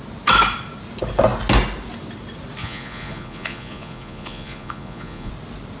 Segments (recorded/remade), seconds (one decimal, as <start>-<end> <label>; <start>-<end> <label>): 0.0-2.6 recorded; 2.6-5.3 remade; 5.3-5.8 recorded